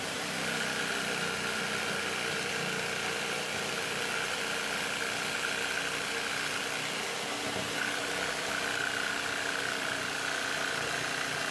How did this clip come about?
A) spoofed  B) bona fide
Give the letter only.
B